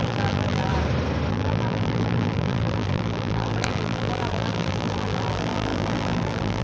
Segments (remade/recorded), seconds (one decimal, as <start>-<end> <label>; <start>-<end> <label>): 0.0-0.7 remade; 0.7-1.3 recorded; 1.3-6.6 remade